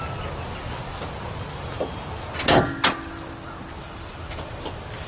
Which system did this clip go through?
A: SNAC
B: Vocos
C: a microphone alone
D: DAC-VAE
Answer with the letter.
C